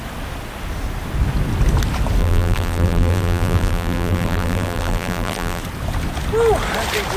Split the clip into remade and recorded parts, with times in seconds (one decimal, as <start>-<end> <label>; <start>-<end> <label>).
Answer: 0.0-2.2 recorded; 2.2-5.6 remade; 5.6-7.2 recorded